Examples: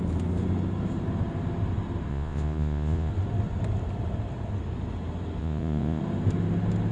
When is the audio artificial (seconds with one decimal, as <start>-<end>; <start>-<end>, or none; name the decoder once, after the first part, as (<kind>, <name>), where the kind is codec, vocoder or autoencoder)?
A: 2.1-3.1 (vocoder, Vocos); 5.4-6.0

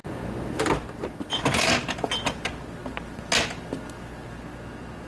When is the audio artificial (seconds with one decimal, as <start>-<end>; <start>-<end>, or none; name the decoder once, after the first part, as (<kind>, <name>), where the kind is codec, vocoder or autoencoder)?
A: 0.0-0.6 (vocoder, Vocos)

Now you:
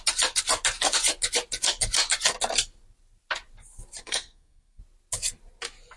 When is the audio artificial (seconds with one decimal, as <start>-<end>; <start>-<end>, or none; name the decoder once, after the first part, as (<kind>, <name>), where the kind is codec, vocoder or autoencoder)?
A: 4.0-4.8 (codec, SNAC)

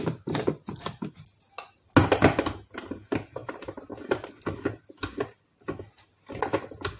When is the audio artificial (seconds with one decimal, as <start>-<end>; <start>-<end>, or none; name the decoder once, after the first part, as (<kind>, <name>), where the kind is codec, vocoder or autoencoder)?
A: 3.4-3.9 (vocoder, BigVGAN v2)

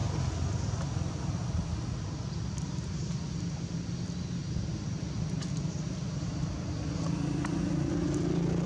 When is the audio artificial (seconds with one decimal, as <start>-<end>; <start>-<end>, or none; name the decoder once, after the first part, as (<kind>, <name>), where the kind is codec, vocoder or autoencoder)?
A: none

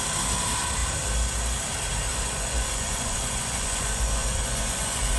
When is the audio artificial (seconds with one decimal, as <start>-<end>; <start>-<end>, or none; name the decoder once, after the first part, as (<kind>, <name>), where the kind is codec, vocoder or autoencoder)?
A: 2.1-5.2 (vocoder, Vocos)

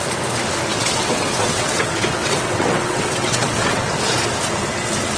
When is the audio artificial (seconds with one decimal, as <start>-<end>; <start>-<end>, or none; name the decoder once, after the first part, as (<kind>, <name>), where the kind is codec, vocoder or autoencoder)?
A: 0.7-3.8 (vocoder, WaveNeXt)

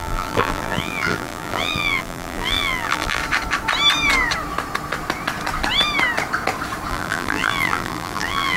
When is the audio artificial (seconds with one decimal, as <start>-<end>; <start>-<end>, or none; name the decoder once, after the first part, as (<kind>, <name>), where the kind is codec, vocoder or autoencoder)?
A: 0.0-3.2 (vocoder, BigVGAN v2); 6.9-8.6